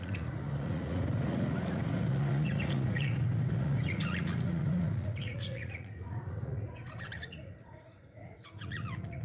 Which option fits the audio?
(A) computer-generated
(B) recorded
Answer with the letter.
A